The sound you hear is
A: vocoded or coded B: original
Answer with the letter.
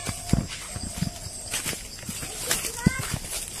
B